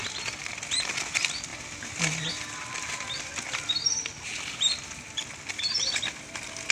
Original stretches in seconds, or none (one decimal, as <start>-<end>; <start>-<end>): 1.0-6.7